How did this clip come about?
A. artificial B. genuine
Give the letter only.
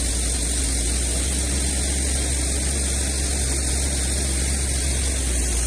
B